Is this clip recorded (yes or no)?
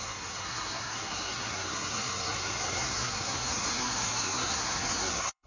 no